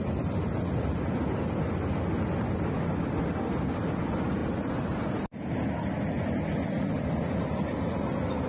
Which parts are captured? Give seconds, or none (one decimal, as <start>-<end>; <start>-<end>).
0.0-8.5